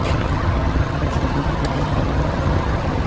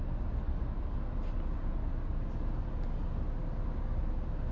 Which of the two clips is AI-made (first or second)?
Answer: first